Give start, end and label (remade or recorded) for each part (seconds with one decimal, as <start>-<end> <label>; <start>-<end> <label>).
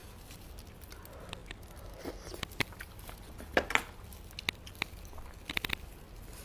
0.0-6.4 recorded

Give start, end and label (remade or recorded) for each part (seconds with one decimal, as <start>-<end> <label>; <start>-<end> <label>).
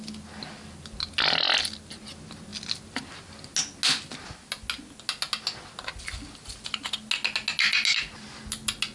0.0-8.9 recorded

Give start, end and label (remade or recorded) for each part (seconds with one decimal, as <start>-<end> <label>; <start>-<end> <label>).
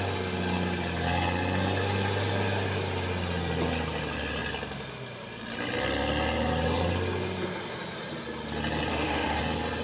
0.0-8.9 recorded; 8.9-9.4 remade; 9.4-9.8 recorded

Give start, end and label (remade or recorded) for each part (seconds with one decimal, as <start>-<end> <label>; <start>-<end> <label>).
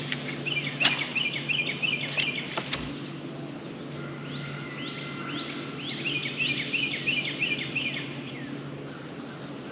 0.0-9.7 recorded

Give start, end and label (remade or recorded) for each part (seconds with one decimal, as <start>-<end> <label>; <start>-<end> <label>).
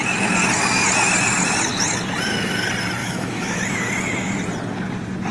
0.0-3.0 recorded; 3.0-3.6 remade; 3.6-5.3 recorded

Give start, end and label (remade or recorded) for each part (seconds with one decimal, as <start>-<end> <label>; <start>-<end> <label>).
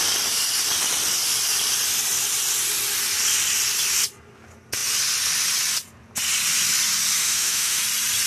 0.0-7.2 recorded; 7.2-7.8 remade; 7.8-8.3 recorded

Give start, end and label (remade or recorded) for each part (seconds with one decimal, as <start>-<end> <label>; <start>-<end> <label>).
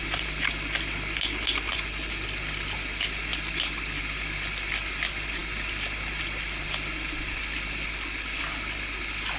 0.0-9.4 recorded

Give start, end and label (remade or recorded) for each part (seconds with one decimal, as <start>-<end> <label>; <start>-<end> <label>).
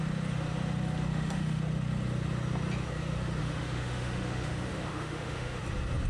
0.0-1.1 recorded; 1.1-1.6 remade; 1.6-3.4 recorded; 3.4-5.6 remade; 5.6-6.1 recorded